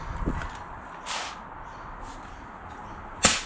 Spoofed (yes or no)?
no